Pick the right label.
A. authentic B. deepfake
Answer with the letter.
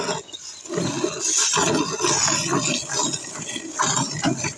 A